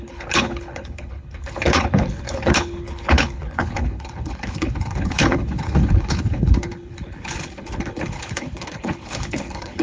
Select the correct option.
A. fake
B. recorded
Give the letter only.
A